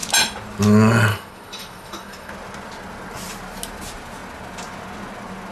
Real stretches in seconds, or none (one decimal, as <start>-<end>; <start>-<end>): 0.0-1.1; 2.3-5.5